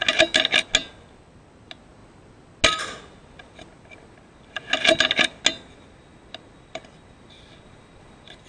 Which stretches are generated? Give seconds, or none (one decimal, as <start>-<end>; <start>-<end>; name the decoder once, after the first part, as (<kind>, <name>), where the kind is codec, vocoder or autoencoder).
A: none